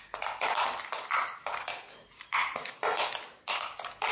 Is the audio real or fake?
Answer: real